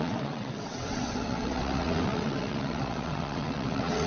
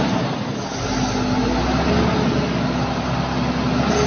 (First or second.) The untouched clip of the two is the second